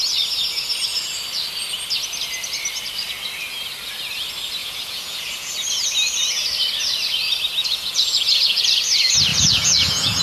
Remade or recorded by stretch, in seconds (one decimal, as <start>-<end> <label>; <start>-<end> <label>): 0.0-4.6 recorded; 4.6-5.5 remade; 5.5-7.6 recorded; 7.6-8.7 remade; 8.7-9.3 recorded; 9.3-10.2 remade